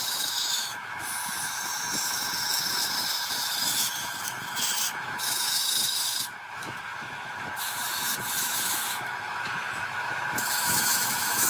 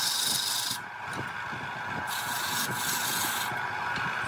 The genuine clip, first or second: second